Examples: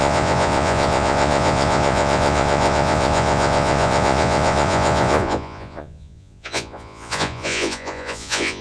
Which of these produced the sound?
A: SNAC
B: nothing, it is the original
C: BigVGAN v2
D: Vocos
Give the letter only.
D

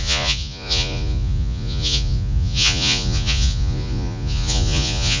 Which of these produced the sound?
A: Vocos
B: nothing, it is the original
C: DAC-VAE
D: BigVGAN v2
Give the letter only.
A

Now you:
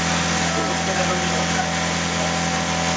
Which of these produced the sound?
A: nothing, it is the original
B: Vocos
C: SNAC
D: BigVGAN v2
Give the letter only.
A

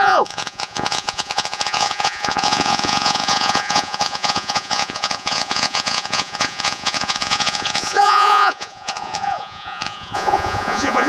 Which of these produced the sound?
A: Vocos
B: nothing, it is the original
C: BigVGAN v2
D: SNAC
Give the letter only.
A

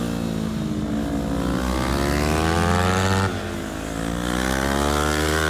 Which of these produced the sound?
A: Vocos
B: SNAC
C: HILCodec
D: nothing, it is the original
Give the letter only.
D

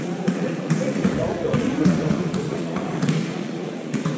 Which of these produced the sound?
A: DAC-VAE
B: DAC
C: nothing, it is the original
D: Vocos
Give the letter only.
D